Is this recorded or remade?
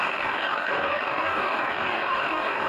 remade